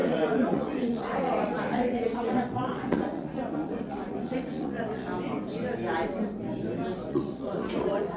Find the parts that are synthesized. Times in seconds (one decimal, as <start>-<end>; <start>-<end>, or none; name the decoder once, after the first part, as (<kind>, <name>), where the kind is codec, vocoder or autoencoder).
0.0-5.1 (vocoder, Vocos); 7.1-8.2